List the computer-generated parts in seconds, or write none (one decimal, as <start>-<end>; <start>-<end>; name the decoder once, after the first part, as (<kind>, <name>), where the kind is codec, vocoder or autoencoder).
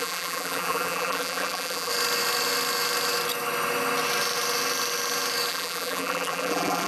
0.0-1.9 (vocoder, BigVGAN v2); 5.5-6.9